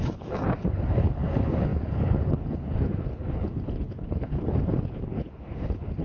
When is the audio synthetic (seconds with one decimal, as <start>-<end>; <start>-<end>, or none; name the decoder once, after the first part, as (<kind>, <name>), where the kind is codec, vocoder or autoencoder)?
0.0-6.0 (codec, HILCodec)